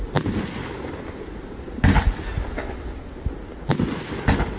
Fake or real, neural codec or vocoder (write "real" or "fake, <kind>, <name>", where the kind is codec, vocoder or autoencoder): real